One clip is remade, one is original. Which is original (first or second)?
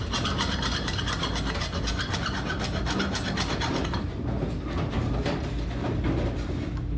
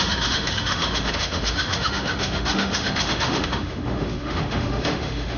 first